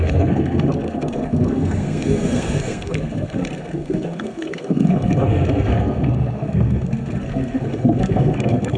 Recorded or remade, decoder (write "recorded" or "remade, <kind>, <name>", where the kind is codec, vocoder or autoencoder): remade, codec, SNAC